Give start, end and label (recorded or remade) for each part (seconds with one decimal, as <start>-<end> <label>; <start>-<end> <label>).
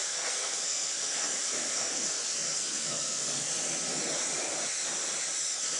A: 0.0-3.5 remade; 3.5-5.8 recorded